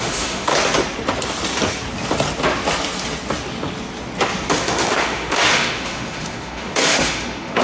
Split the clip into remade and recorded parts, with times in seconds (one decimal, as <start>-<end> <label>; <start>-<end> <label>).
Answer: 0.0-0.5 remade; 0.5-4.5 recorded; 4.5-7.6 remade